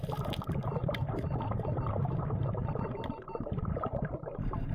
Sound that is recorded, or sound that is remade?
remade